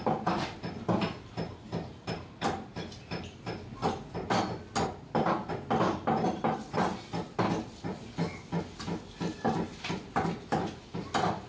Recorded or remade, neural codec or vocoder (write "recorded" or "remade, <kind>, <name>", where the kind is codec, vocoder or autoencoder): recorded